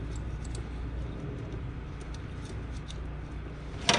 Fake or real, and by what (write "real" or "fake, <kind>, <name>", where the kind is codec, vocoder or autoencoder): real